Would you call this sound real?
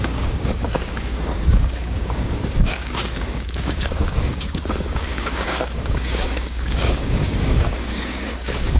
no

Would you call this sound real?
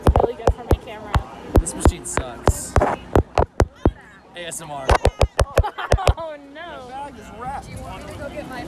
yes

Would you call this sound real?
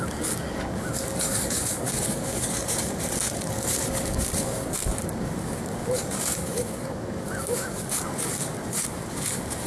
no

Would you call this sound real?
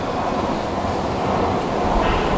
yes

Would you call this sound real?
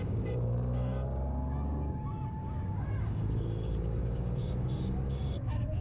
no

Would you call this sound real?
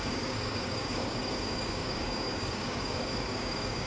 no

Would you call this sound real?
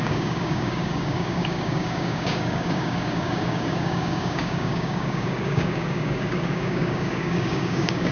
no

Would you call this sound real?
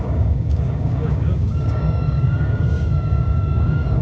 no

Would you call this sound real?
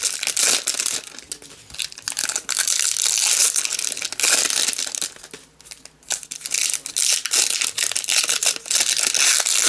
yes